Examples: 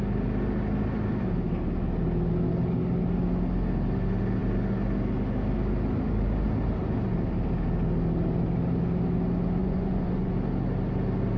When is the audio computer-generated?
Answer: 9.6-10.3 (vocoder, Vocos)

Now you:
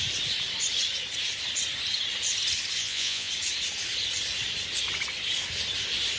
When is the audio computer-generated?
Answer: 2.8-3.3 (vocoder, Vocos)

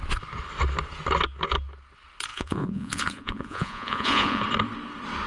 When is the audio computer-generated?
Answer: 2.3-4.4 (vocoder, Vocos)

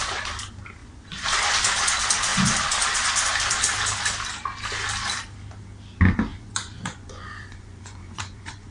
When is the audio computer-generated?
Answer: 0.8-1.4 (vocoder, Vocos); 6.3-8.7

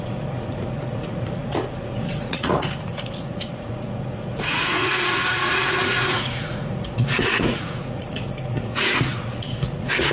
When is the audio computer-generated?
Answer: 0.0-10.1 (vocoder, Vocos)

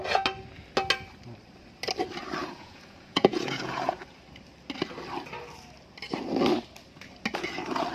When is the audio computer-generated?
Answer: 2.4-4.0 (vocoder, Vocos)